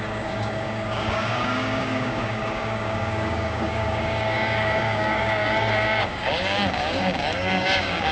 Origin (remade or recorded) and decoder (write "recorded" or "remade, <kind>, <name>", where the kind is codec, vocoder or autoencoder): remade, codec, DAC